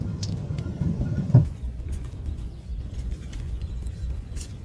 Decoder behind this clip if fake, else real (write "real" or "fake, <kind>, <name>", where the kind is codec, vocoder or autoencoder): fake, vocoder, Vocos